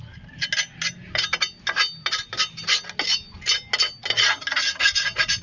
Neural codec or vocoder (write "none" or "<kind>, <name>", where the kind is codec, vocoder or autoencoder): none